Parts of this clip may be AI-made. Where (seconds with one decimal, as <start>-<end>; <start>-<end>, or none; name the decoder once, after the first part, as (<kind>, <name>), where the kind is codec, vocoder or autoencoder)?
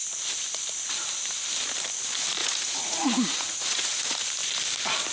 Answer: 2.4-4.3 (vocoder, Vocos)